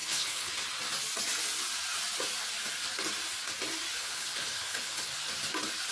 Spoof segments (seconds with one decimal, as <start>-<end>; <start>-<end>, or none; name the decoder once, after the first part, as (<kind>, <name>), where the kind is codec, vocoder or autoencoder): 0.0-0.5 (codec, HILCodec); 4.0-5.1